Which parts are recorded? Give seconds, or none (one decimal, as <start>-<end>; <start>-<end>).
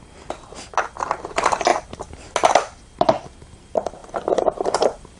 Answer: 0.0-4.0